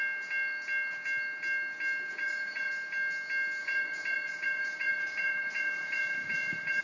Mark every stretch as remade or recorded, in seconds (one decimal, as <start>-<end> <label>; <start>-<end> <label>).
0.0-2.1 recorded; 2.1-2.7 remade; 2.7-3.6 recorded; 3.6-6.8 remade